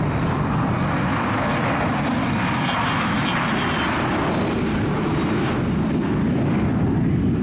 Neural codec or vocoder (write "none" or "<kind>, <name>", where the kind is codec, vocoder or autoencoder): none